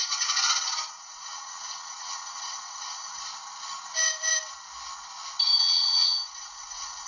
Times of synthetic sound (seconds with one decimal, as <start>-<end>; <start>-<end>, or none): 0.0-3.3; 5.6-7.1